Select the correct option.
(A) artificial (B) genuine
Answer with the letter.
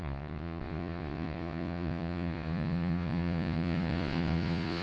A